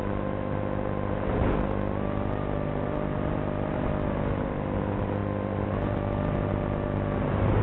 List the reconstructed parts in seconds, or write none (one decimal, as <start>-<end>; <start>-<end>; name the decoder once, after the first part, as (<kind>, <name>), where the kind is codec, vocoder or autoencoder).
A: none